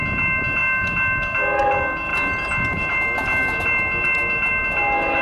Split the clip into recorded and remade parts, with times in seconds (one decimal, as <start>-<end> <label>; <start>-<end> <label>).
0.0-5.2 recorded